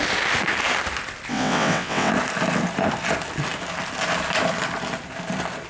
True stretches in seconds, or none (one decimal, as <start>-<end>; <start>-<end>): 0.0-1.3; 2.1-5.7

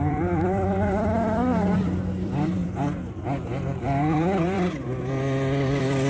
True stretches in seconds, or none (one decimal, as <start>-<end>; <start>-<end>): none